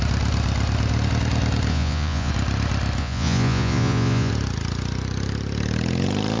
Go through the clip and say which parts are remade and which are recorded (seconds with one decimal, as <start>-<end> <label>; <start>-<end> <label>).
0.0-1.7 recorded; 1.7-2.3 remade; 2.3-3.0 recorded; 3.0-4.3 remade; 4.3-6.4 recorded